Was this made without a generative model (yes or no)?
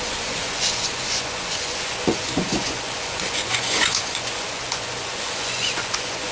no